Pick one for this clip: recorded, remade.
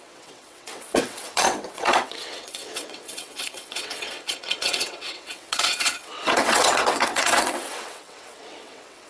remade